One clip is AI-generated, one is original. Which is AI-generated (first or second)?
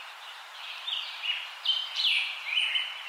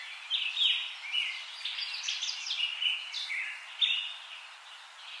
first